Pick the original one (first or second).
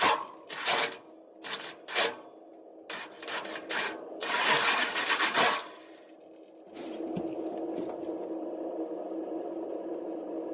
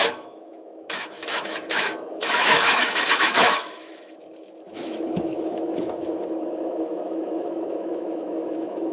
first